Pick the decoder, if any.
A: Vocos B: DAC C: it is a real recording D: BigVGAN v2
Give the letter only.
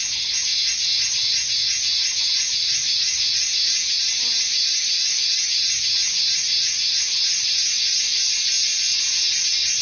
C